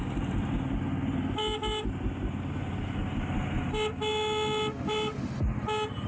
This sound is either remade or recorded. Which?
recorded